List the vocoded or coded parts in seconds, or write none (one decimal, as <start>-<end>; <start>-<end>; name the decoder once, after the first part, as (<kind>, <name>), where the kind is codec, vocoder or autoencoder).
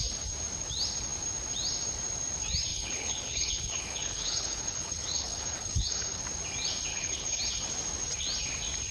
2.7-6.2 (codec, HILCodec); 6.9-7.4